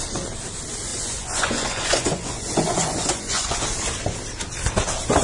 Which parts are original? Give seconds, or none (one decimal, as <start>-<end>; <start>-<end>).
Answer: 0.0-0.9; 3.6-5.2